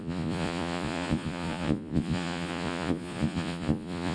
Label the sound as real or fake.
fake